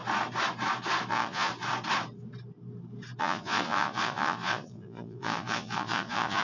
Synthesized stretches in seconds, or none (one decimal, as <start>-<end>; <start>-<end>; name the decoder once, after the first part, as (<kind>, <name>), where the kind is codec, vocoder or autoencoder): 1.1-1.5 (vocoder, Vocos); 3.2-6.4